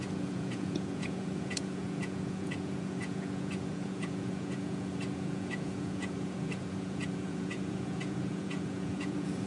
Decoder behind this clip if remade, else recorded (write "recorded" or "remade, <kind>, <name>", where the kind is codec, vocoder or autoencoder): remade, vocoder, Vocos